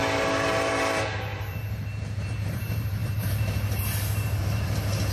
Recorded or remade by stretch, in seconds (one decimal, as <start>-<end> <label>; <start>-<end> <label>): 0.0-5.1 remade